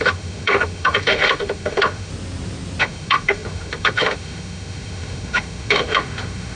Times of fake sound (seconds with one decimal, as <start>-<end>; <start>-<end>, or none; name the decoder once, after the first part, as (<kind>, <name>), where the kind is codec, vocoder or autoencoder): 0.0-2.1 (autoencoder, DAC-VAE); 2.8-6.6